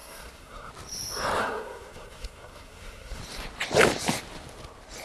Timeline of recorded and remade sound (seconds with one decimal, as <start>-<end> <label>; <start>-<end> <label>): 0.0-0.7 remade; 0.7-1.4 recorded; 1.4-3.2 remade; 3.2-5.0 recorded